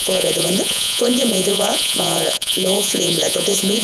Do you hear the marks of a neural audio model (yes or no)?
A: yes